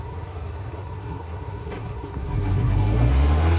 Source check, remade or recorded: remade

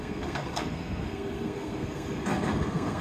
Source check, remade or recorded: remade